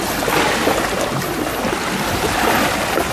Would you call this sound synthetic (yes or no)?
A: no